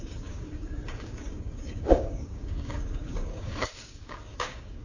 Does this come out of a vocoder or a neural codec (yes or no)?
yes